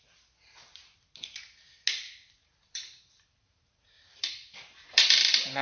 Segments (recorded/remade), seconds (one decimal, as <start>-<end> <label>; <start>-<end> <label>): 0.0-2.4 recorded; 2.4-5.6 remade